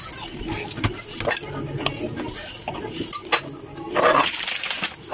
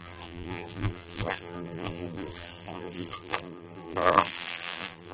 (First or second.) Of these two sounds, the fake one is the second